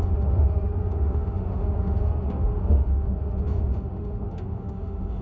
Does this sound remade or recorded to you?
remade